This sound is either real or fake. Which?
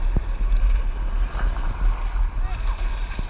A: real